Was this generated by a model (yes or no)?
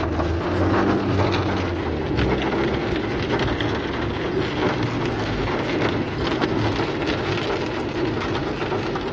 no